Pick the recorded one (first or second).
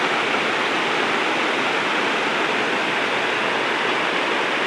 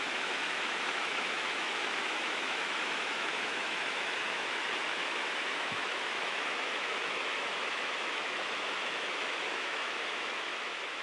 first